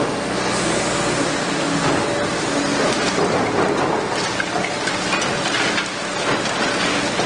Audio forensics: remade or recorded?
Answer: recorded